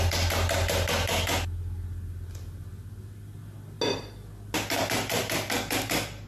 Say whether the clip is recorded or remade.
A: recorded